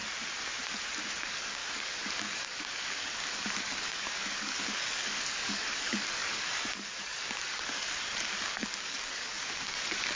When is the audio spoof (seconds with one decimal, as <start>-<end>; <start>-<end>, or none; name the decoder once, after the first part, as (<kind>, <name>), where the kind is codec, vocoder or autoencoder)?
1.2-10.2 (codec, DAC)